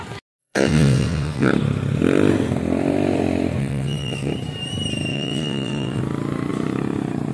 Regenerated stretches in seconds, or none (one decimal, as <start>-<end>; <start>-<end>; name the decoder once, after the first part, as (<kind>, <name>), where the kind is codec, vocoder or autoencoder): 0.4-1.5 (vocoder, WaveNeXt); 3.6-4.3; 5.1-6.0